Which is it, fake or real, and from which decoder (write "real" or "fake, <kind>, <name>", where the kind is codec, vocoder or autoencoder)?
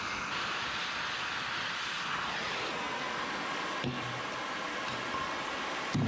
real